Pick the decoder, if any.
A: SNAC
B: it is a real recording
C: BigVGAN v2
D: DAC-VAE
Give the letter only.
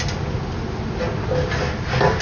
B